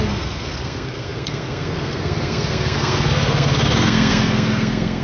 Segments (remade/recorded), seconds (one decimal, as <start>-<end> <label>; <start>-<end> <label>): 0.0-5.0 remade